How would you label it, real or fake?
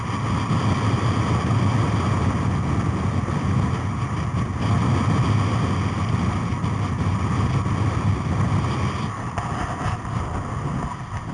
real